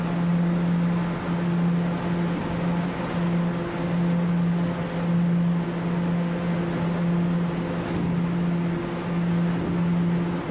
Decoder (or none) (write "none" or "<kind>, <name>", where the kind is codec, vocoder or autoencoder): none